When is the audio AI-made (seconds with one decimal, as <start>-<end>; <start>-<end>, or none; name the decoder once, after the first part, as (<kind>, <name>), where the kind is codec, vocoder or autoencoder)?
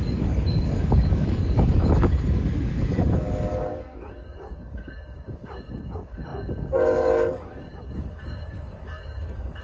0.0-9.6 (codec, DAC)